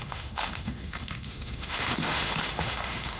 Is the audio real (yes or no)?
no